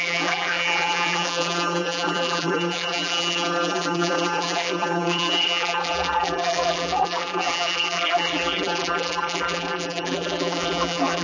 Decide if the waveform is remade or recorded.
remade